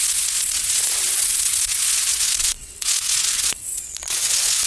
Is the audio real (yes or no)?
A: no